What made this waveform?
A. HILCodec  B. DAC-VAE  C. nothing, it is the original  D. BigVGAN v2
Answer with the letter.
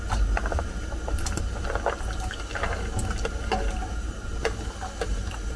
C